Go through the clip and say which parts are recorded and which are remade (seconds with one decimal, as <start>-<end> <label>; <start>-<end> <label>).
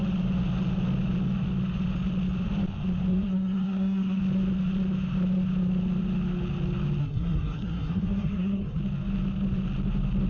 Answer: 0.0-3.1 recorded; 3.1-4.2 remade; 4.2-7.0 recorded; 7.0-8.8 remade; 8.8-10.3 recorded